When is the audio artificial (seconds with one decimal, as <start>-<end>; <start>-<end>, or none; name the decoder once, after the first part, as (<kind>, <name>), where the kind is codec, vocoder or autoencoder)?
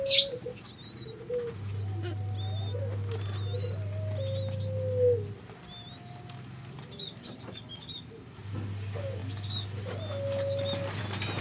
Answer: none